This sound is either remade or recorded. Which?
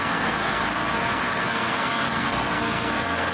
remade